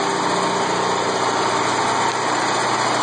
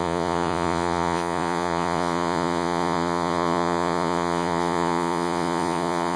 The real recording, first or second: first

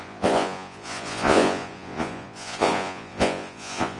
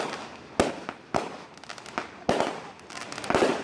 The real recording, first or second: second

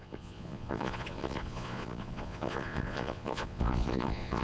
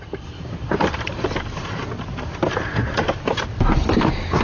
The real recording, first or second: second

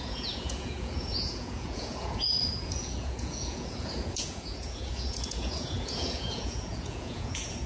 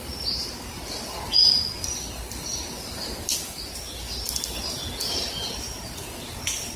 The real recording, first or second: second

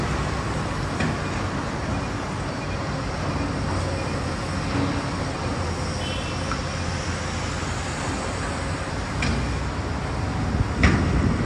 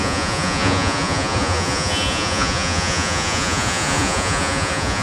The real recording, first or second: first